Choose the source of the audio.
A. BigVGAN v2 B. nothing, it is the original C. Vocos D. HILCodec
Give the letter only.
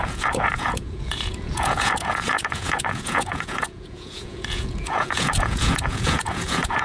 C